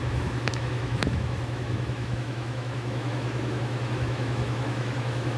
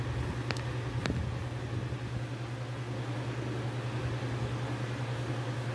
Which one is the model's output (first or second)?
first